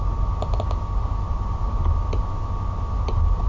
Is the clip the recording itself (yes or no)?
yes